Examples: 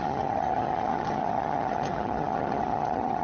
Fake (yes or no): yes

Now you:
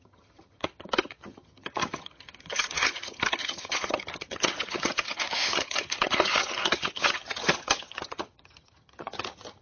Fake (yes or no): yes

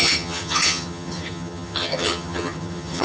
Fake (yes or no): yes